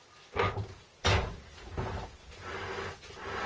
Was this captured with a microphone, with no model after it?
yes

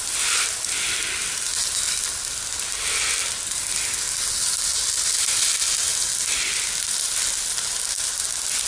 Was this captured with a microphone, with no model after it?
yes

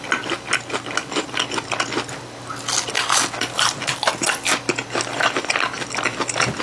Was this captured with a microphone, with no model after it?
yes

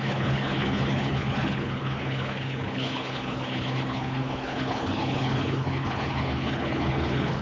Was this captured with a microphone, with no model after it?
no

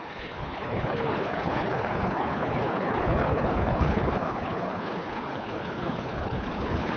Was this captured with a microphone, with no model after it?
no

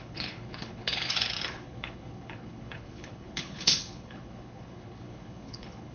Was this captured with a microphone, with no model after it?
no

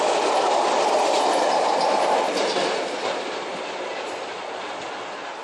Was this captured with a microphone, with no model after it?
yes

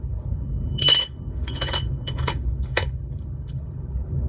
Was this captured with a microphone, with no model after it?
no